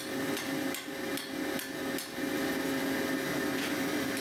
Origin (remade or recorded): recorded